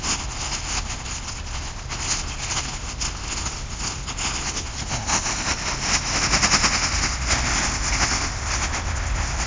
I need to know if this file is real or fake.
real